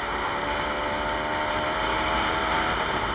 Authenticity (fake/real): real